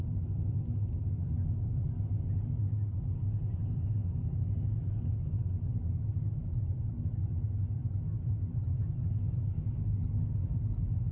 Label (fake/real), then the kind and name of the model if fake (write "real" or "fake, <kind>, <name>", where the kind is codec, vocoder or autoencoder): real